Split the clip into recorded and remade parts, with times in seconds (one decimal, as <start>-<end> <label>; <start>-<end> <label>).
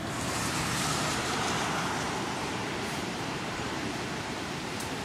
0.0-5.0 remade